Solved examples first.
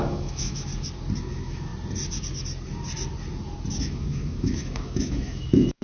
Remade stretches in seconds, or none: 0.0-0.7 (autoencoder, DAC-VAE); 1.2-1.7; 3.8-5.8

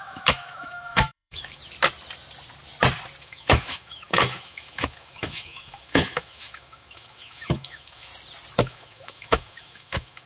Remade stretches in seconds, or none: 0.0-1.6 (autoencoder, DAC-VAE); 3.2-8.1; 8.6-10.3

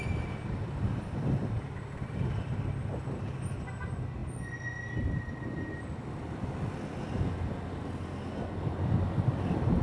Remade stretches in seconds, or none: none

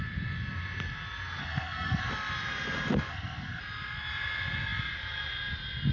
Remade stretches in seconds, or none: 1.4-2.1 (codec, SNAC); 3.1-3.6